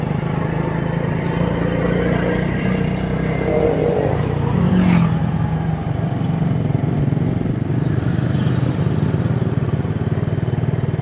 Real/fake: real